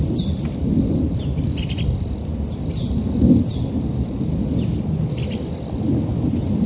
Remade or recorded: remade